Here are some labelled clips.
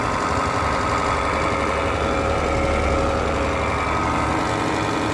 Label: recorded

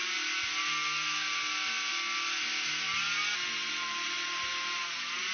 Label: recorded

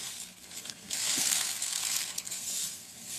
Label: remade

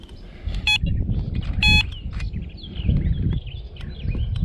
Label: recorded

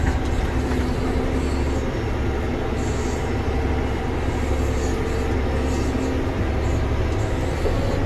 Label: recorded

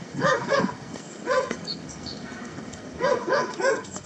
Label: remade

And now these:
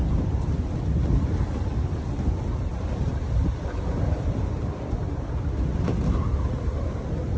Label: recorded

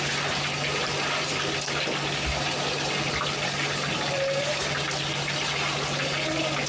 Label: recorded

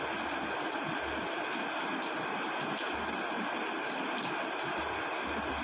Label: recorded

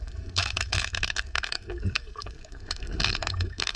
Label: remade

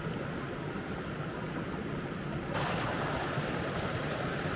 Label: recorded